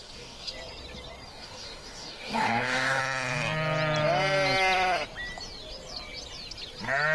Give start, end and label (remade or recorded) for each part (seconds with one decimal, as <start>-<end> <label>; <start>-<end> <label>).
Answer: 0.0-0.5 remade; 0.5-1.3 recorded; 1.3-3.0 remade; 3.0-7.1 recorded